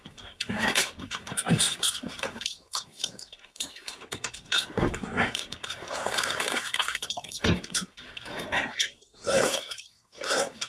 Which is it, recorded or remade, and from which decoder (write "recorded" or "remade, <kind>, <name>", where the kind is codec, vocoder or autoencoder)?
remade, codec, SNAC